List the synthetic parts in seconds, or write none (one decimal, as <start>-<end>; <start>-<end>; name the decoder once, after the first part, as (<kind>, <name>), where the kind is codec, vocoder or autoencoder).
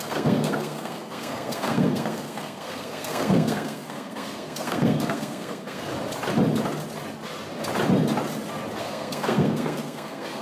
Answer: 0.0-5.9 (codec, SNAC); 8.8-10.4